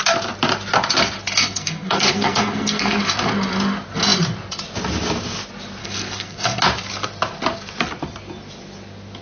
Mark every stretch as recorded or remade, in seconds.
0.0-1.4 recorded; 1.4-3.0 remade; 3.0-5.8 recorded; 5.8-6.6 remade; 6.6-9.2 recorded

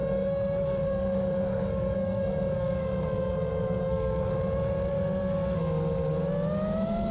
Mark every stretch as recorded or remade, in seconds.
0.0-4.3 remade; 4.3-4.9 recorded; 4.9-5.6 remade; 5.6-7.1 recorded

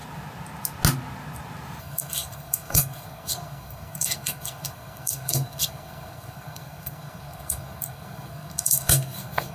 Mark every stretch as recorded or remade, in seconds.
0.0-1.8 recorded; 1.8-9.5 remade